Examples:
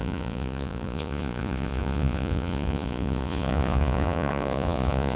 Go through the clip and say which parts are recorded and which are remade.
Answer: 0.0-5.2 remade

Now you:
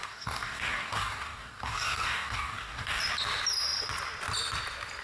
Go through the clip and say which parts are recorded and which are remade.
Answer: 0.0-3.0 remade; 3.0-5.0 recorded

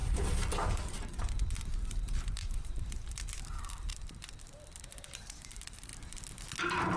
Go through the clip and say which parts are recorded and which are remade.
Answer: 0.0-3.9 remade; 3.9-4.8 recorded; 4.8-5.9 remade; 5.9-6.6 recorded; 6.6-7.0 remade

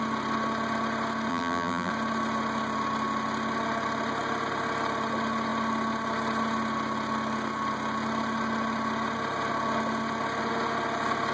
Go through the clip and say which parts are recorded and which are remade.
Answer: 0.0-1.3 recorded; 1.3-1.9 remade; 1.9-11.3 recorded

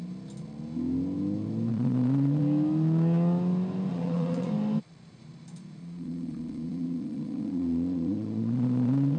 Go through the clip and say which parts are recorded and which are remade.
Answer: 0.0-1.7 recorded; 1.7-2.4 remade; 2.4-3.9 recorded; 3.9-4.5 remade; 4.5-5.8 recorded; 5.8-9.2 remade